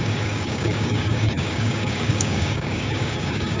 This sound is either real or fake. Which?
fake